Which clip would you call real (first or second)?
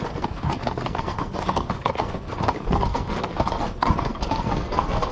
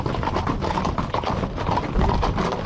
second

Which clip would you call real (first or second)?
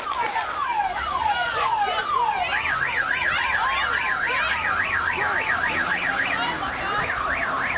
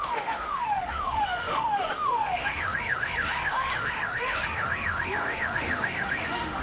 first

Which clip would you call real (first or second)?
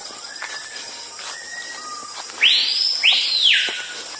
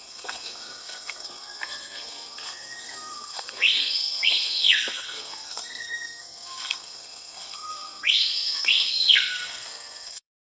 first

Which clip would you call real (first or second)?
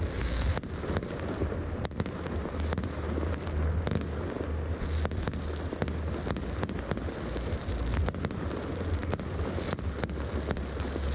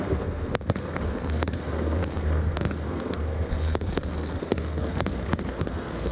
first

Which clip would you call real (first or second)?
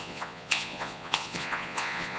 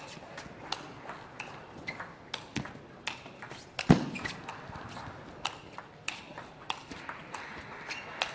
second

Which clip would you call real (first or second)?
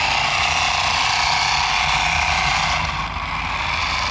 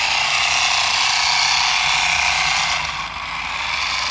second